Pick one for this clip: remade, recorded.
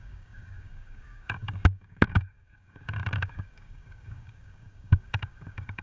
remade